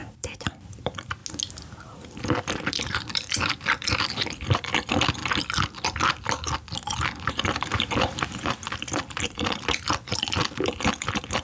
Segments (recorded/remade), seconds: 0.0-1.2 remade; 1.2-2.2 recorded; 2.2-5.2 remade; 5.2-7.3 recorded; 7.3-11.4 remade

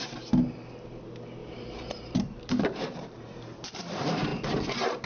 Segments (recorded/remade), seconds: 0.0-1.4 recorded; 1.4-3.7 remade; 3.7-5.1 recorded

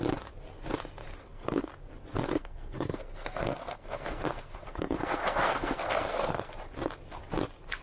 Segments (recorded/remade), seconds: 0.0-1.2 recorded; 1.2-1.7 remade; 1.7-2.1 recorded; 2.1-6.5 remade; 6.5-7.8 recorded

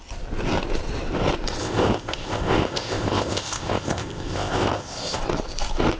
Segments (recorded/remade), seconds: 0.0-1.6 recorded; 1.6-5.2 remade; 5.2-6.0 recorded

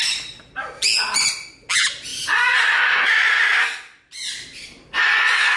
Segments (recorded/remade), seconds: 0.0-5.6 recorded

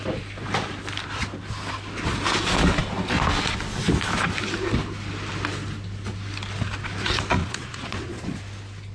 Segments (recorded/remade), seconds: 0.0-7.4 recorded; 7.4-8.4 remade; 8.4-8.9 recorded